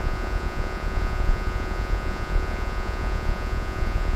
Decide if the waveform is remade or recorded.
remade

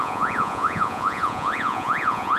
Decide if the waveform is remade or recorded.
remade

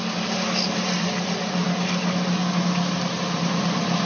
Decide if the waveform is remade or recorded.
recorded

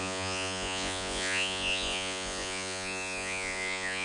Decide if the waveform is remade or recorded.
remade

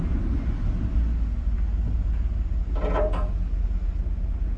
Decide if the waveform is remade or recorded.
recorded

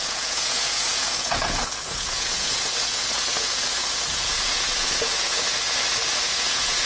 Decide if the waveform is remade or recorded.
remade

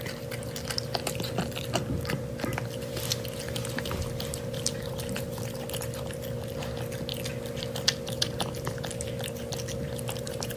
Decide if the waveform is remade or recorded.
recorded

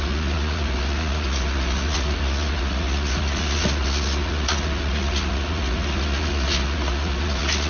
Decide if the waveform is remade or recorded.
remade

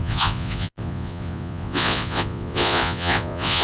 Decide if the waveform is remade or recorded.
remade